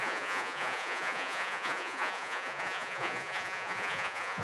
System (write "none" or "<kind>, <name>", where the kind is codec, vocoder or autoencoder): vocoder, Vocos